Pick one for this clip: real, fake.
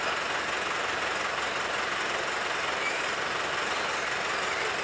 real